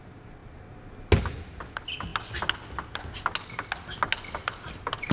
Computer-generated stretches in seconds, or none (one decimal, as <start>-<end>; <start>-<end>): none